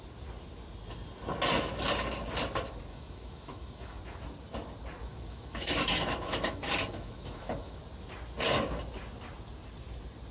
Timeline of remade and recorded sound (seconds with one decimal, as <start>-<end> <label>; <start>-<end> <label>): 0.0-2.9 recorded; 2.9-4.0 remade; 4.0-5.0 recorded; 5.0-7.8 remade; 7.8-10.3 recorded